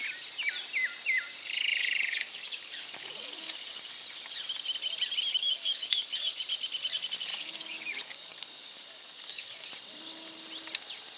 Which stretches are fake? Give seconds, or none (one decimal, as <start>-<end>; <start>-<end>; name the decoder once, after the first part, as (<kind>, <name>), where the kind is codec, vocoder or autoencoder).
1.4-3.7 (codec, DAC); 5.3-6.4; 7.3-9.7